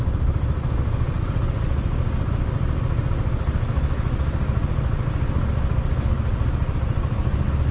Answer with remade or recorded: recorded